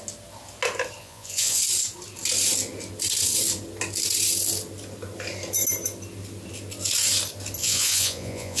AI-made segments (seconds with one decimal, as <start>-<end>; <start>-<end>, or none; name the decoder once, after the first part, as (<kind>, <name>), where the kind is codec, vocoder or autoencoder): 1.0-1.6 (vocoder, Vocos); 7.6-8.6